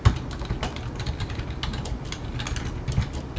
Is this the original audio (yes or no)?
yes